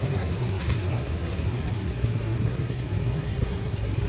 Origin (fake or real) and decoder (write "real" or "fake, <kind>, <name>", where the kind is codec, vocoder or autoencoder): fake, codec, SNAC